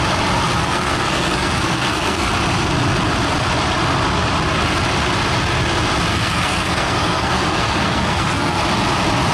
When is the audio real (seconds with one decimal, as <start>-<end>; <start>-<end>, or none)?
0.0-0.6; 2.3-6.1; 8.6-9.3